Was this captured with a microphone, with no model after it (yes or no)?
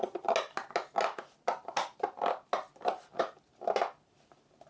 yes